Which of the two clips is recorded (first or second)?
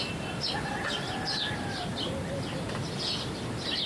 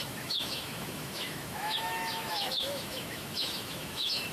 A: first